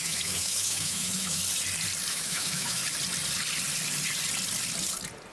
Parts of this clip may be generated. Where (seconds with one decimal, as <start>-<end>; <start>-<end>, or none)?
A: 0.0-1.4; 2.1-2.8